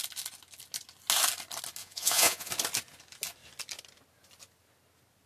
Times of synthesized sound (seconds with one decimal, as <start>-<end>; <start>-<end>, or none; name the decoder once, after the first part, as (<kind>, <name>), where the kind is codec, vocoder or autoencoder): 1.8-2.5 (vocoder, Vocos)